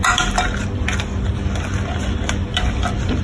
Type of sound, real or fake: real